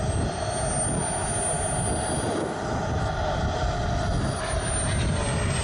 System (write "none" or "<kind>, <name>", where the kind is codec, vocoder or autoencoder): none